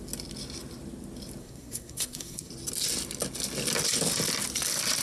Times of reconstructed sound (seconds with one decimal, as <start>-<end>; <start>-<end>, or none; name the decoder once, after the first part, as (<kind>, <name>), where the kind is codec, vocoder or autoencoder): 1.4-2.5 (codec, SNAC)